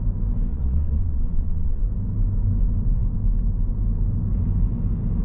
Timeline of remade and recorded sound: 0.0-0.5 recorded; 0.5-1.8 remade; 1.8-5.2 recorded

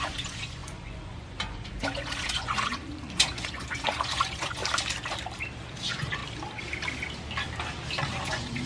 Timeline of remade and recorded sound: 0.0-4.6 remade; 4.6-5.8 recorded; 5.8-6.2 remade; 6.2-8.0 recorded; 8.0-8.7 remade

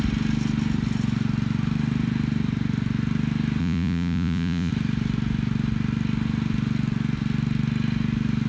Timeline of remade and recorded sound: 0.0-3.6 recorded; 3.6-4.7 remade; 4.7-8.5 recorded